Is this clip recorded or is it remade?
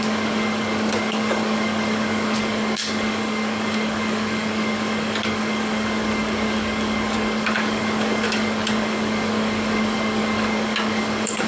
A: remade